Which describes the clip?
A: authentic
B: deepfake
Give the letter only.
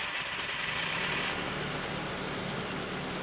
A